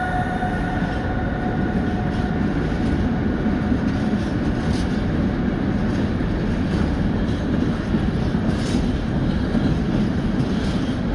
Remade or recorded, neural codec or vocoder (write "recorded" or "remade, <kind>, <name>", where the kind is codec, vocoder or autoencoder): recorded